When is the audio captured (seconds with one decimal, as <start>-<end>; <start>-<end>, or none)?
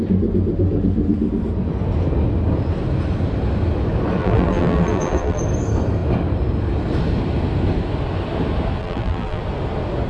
0.0-4.2; 5.4-8.8; 9.4-10.1